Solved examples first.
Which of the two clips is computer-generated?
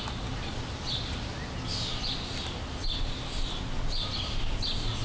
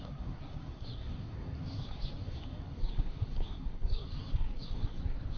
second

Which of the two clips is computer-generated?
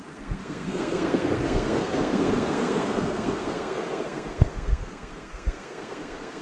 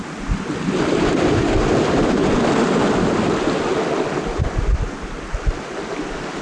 first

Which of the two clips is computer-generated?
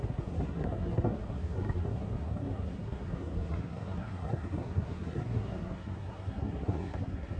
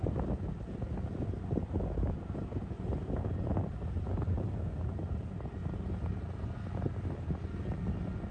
first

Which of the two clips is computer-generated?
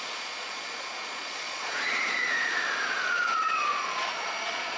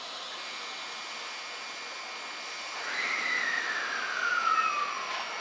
first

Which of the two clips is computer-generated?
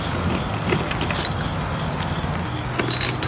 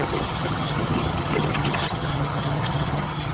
second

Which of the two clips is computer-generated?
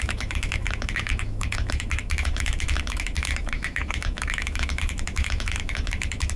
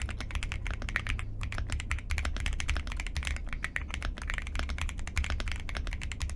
first